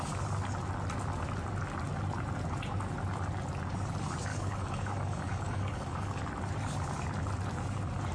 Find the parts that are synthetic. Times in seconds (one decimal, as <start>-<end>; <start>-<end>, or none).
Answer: 4.3-6.2